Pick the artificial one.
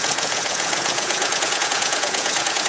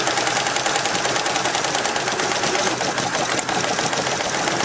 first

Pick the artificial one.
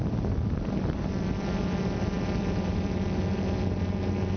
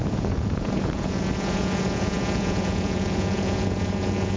second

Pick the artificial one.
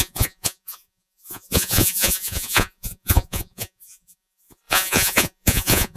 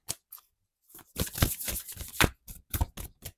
first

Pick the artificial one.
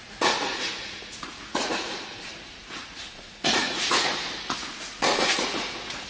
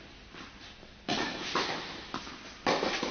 first